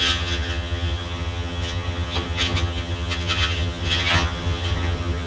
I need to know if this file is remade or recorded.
remade